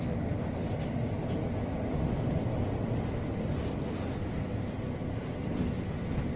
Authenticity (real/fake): real